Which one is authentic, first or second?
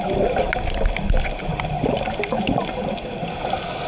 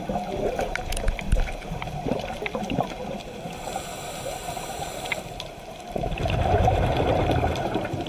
first